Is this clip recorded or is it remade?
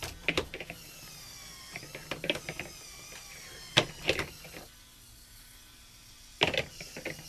recorded